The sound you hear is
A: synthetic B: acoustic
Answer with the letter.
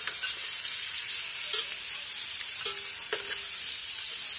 B